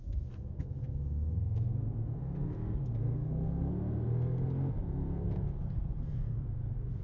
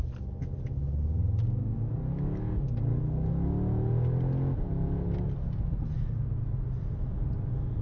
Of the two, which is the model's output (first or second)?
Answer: first